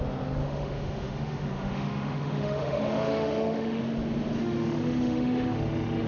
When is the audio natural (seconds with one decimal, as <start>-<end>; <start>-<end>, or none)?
0.0-0.4; 3.8-4.4